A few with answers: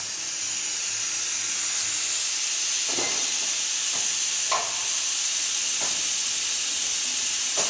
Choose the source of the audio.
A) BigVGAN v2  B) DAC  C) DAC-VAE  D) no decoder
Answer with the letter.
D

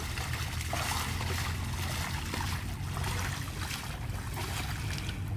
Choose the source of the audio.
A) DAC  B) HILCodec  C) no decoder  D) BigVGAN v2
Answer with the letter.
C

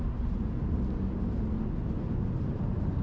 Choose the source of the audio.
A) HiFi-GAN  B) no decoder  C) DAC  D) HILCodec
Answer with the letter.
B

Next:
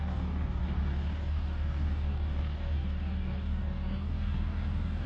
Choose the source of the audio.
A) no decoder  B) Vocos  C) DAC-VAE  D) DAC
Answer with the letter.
D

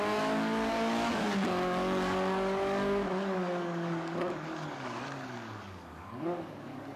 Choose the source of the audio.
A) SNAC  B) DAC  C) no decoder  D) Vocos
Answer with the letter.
B